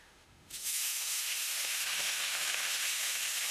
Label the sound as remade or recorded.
remade